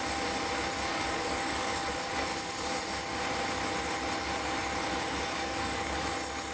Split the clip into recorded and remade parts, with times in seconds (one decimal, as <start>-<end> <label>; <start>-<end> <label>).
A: 0.0-0.9 recorded; 0.9-2.6 remade; 2.6-4.8 recorded; 4.8-6.1 remade; 6.1-6.5 recorded